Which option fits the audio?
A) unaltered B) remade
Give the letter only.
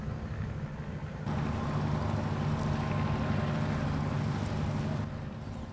A